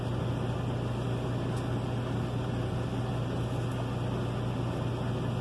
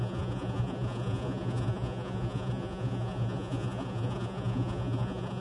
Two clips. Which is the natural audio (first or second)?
first